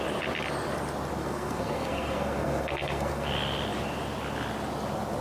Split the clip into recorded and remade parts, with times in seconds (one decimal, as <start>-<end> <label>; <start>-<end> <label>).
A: 0.0-1.2 recorded; 1.2-3.3 remade; 3.3-5.2 recorded